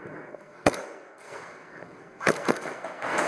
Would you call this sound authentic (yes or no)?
no